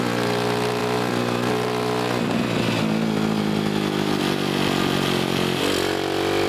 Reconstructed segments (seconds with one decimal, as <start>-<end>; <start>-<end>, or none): none